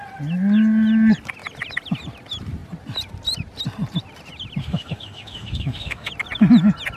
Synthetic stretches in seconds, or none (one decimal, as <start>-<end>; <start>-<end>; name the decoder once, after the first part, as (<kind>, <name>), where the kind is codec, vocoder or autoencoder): 4.6-6.1 (autoencoder, DAC-VAE)